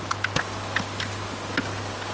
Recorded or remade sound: recorded